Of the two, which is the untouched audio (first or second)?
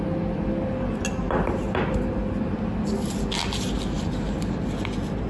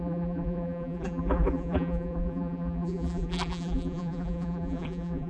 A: first